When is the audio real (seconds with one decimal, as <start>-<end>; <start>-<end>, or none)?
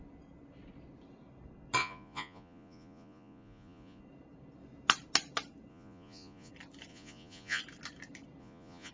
0.0-1.8; 4.0-5.7; 6.5-6.9; 7.6-8.4